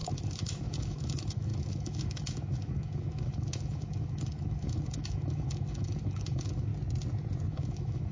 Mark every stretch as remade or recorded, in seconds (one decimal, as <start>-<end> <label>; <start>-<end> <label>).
0.0-6.7 remade; 6.7-7.5 recorded; 7.5-8.1 remade